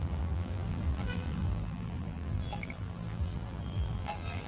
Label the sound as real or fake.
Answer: fake